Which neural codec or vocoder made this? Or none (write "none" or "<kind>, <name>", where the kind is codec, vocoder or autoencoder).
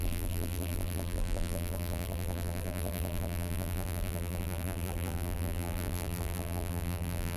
vocoder, BigVGAN v2